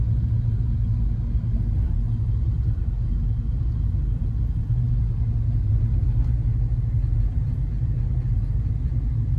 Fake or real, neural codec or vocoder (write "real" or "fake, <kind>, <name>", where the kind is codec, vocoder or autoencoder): real